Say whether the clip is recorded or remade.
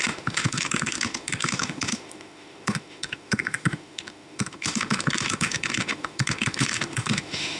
remade